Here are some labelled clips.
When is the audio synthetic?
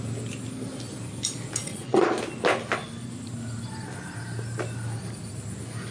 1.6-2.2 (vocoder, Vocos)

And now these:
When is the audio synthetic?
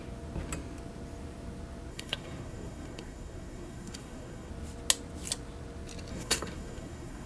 1.9-4.5 (codec, SNAC); 6.1-7.3